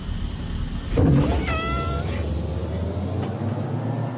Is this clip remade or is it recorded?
recorded